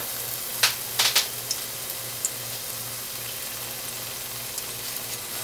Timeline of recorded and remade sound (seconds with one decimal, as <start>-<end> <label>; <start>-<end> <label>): 0.0-5.4 recorded